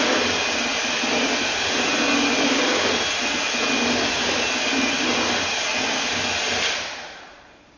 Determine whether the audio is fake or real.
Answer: real